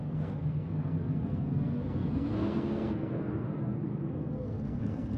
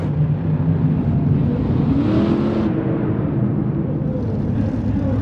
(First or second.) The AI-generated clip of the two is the first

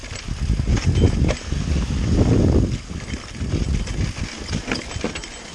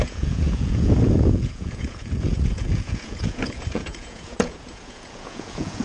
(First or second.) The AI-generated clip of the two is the second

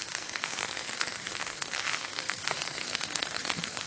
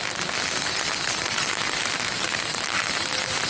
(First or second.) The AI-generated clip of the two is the first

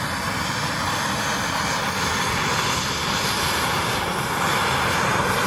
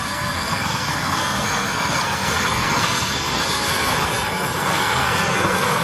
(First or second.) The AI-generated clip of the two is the second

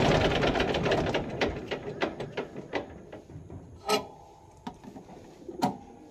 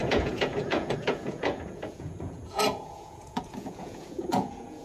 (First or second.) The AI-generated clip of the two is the second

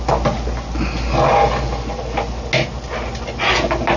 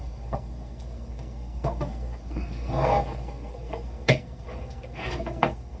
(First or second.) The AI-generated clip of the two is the second